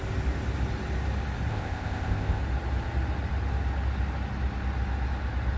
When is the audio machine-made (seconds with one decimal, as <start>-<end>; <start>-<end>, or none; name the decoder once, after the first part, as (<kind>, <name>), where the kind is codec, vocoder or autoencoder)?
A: 1.5-2.4 (codec, ZipCodec)